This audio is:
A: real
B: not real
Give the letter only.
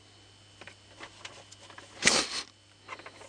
A